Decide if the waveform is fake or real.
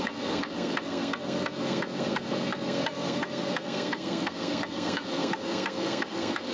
fake